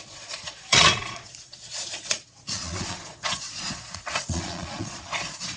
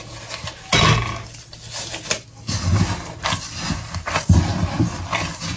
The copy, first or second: first